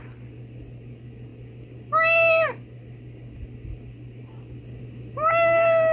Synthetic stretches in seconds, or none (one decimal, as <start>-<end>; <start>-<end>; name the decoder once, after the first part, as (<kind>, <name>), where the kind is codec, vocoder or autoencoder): none